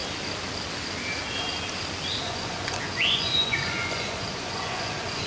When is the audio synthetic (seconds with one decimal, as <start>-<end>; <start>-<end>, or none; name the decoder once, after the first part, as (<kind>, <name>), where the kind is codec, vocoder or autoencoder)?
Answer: 2.2-5.3 (vocoder, Vocos)